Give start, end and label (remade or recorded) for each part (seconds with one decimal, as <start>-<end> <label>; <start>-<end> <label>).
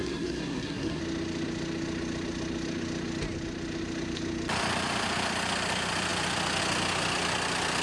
0.0-1.0 remade; 1.0-7.8 recorded